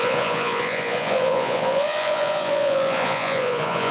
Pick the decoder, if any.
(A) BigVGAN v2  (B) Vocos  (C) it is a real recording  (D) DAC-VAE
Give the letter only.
B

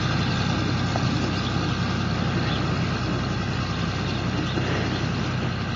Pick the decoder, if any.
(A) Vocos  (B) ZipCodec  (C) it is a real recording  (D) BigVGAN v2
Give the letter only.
C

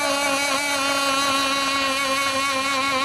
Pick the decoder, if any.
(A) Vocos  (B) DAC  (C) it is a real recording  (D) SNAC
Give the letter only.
C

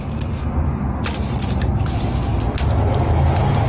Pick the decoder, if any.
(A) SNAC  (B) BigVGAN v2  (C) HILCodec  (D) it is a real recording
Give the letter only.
D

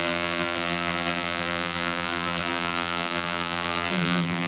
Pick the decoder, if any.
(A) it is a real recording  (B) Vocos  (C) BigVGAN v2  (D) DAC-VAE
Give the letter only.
C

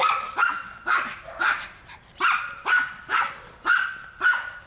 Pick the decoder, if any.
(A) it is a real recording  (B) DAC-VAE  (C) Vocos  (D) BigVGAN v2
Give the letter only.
A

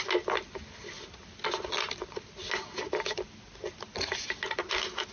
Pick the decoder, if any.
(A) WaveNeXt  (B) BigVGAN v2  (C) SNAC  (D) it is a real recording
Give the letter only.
D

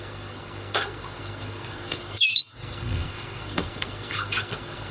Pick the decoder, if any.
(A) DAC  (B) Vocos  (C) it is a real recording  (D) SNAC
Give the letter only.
D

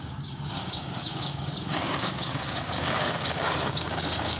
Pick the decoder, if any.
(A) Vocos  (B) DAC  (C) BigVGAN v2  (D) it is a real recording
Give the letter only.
B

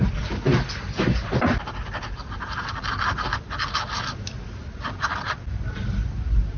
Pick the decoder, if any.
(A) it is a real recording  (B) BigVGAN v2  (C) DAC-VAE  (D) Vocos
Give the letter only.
A